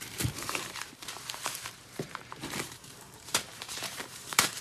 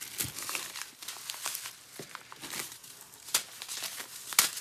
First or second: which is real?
second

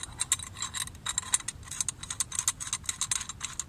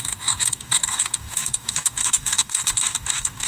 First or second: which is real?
first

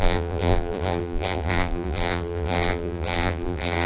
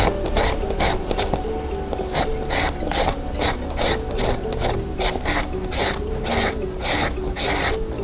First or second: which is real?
second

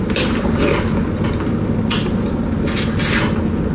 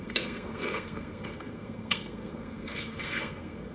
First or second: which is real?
first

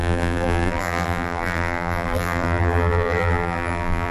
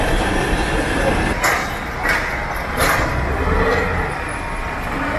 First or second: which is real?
second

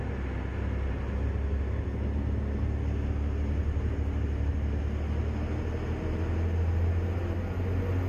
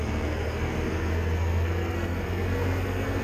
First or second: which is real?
first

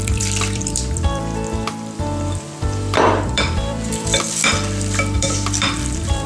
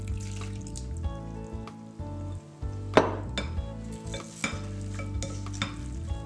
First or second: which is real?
second